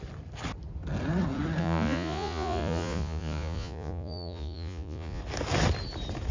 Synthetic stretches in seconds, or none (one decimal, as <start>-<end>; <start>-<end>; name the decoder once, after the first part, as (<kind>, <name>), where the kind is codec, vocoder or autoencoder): 1.6-5.2 (vocoder, Vocos)